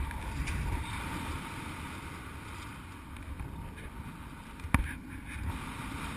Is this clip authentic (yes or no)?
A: yes